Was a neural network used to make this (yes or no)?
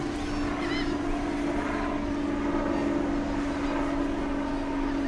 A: no